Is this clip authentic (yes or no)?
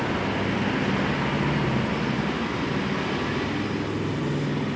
yes